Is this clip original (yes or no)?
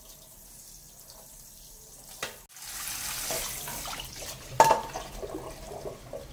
yes